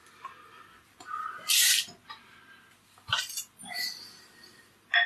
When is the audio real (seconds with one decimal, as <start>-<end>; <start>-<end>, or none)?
0.0-3.1